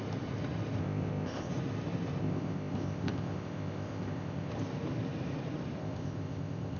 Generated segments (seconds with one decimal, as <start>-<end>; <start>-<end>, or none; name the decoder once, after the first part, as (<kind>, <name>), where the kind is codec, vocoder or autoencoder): 0.8-1.5 (codec, ZipCodec); 2.2-4.5; 5.8-6.8